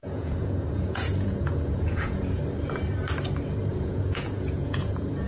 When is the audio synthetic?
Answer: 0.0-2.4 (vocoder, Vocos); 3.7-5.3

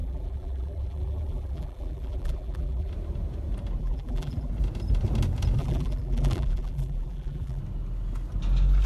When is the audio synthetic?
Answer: 0.0-2.9 (vocoder, BigVGAN v2); 3.8-4.5; 5.6-7.6

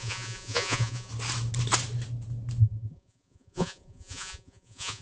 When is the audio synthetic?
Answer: 0.0-1.1 (vocoder, Vocos); 2.6-5.0